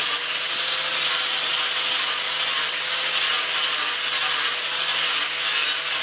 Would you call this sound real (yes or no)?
yes